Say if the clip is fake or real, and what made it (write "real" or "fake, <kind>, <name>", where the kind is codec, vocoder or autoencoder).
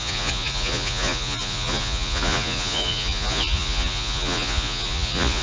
fake, vocoder, Vocos